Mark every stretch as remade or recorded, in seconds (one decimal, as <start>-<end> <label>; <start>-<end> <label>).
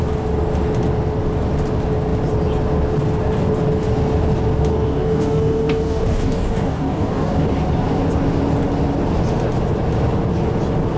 0.0-4.7 recorded; 4.7-7.5 remade; 7.5-11.0 recorded